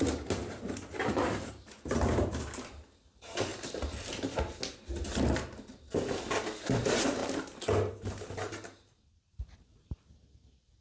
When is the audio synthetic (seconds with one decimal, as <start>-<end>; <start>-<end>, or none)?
0.0-3.5; 6.6-7.2; 7.9-10.8